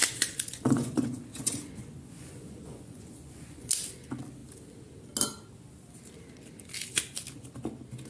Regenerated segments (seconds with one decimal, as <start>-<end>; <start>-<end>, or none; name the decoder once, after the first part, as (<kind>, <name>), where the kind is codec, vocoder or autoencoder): 0.0-3.7 (vocoder, Vocos)